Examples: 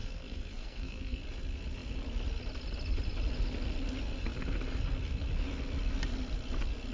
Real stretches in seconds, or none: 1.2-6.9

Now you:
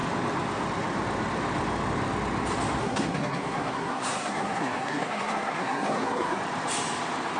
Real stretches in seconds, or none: 0.0-2.8; 6.4-7.4

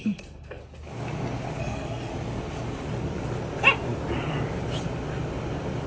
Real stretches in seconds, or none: 0.6-1.6; 2.1-5.9

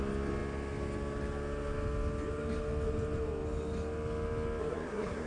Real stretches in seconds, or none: 0.0-4.6

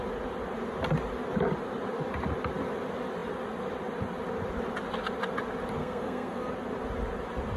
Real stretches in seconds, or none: 0.0-5.8; 6.5-7.6

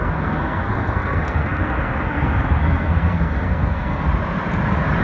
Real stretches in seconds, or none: 4.1-5.0

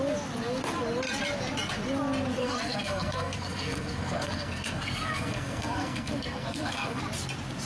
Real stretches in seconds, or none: 0.0-2.4; 7.0-7.7